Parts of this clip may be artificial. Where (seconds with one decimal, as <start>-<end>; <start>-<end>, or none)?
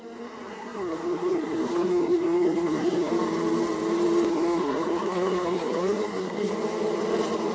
0.5-3.1; 4.3-6.5